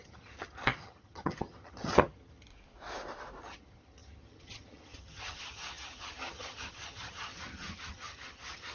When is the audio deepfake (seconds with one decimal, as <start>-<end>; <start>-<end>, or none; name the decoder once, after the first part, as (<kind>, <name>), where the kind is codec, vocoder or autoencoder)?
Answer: 0.0-2.5 (vocoder, HiFi-GAN); 3.4-8.7